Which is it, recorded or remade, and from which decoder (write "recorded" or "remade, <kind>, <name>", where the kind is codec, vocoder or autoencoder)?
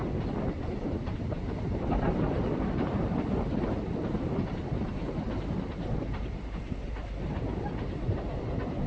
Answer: remade, vocoder, BigVGAN v2